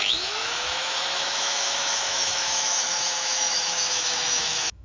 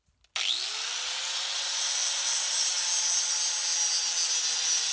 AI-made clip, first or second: first